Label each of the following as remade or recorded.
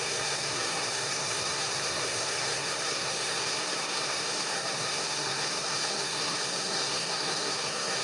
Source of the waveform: remade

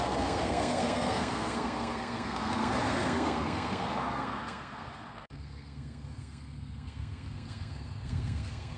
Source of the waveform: remade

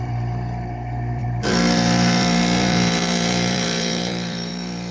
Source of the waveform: remade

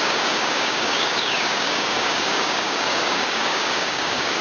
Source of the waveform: remade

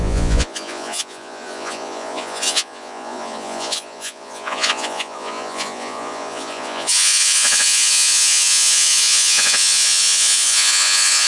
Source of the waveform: remade